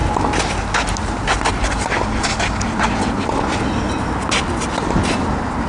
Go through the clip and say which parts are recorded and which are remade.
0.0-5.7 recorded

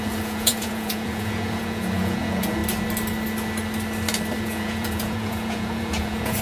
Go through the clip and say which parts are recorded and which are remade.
0.0-2.6 remade; 2.6-4.4 recorded; 4.4-6.4 remade

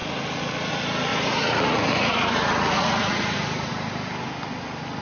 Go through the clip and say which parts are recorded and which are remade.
0.0-1.1 recorded; 1.1-3.7 remade; 3.7-5.0 recorded

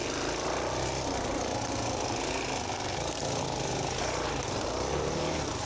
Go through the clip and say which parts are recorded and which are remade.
0.0-5.7 recorded